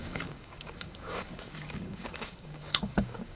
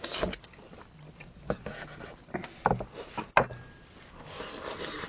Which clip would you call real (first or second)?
second